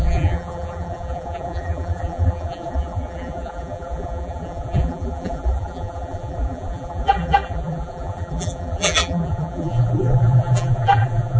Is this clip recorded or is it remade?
remade